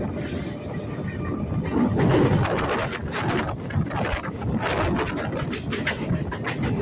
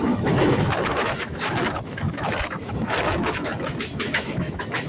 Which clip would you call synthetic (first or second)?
second